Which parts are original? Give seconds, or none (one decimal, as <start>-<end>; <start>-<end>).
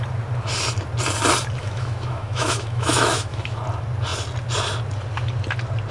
0.0-1.6; 3.6-5.9